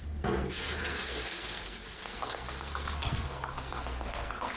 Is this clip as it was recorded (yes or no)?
no